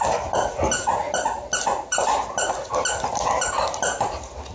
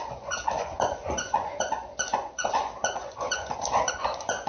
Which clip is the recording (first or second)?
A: first